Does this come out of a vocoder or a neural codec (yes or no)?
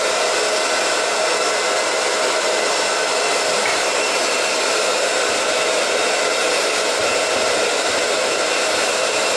no